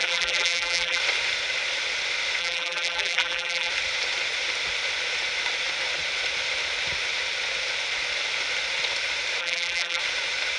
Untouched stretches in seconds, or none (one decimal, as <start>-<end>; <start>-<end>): 1.0-2.4; 3.7-9.4; 10.0-10.6